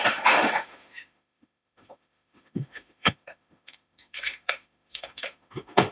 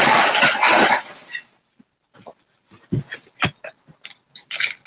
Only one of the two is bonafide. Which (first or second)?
second